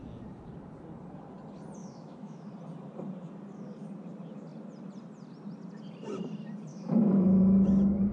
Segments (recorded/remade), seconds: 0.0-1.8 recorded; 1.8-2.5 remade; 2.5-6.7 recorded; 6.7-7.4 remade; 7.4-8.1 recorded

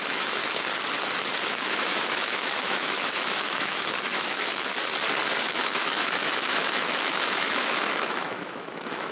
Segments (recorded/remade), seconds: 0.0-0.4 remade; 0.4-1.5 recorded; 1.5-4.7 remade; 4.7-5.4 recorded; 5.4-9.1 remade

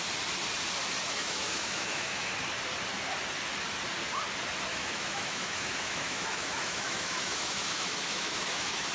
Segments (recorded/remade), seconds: 0.0-1.2 recorded; 1.2-2.3 remade; 2.3-4.7 recorded; 4.7-8.9 remade

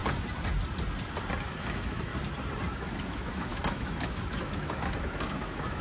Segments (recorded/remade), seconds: 0.0-1.6 recorded; 1.6-2.1 remade; 2.1-2.7 recorded; 2.7-5.8 remade